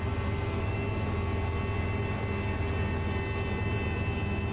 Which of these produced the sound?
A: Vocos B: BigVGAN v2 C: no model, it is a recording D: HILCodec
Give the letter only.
C